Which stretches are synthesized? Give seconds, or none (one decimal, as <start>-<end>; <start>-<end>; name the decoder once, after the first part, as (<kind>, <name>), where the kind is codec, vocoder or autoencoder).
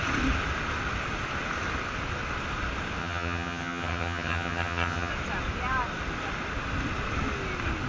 3.0-5.1 (vocoder, HiFi-GAN)